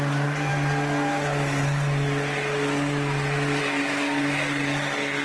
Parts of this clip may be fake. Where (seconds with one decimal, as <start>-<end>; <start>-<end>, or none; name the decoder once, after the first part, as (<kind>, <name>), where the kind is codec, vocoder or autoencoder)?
none